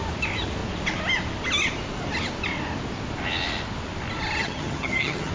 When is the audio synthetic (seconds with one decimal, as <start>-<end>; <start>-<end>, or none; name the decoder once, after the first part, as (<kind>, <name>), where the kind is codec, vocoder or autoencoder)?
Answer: 4.4-5.3 (vocoder, HiFi-GAN)